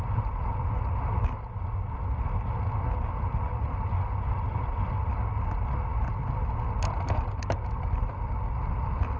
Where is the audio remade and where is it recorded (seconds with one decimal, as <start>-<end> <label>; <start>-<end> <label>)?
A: 0.0-9.2 recorded